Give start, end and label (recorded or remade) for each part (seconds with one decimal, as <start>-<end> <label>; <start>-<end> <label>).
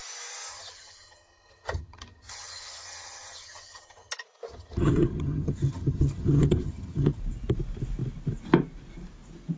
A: 0.0-0.5 recorded; 0.5-4.1 remade; 4.1-4.5 recorded; 4.5-7.2 remade; 7.2-9.6 recorded